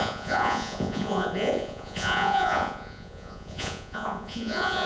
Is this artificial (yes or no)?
yes